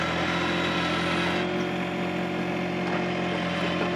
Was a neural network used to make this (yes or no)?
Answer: no